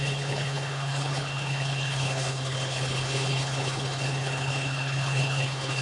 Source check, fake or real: fake